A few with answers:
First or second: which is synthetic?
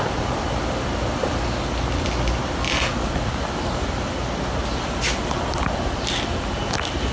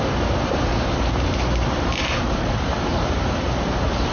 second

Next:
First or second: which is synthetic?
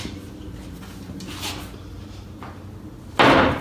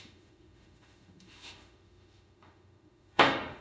second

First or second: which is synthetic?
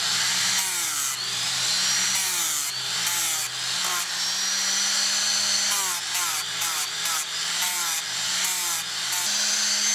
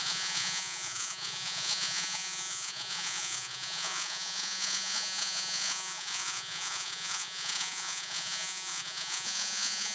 second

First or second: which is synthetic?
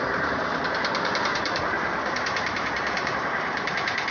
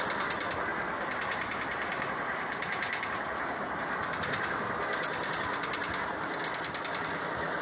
first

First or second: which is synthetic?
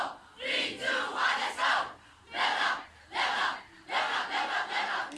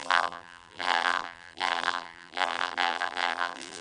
second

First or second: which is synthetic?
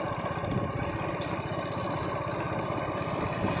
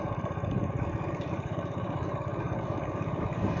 second